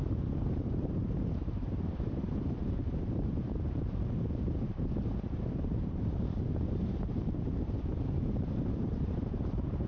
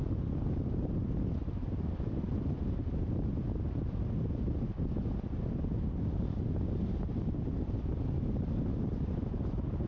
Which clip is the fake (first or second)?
first